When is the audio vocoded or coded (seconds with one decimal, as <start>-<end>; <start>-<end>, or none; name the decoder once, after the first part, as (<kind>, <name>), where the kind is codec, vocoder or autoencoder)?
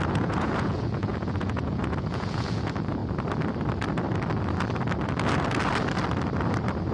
0.0-3.0 (vocoder, Vocos)